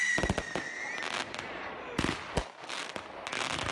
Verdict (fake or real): real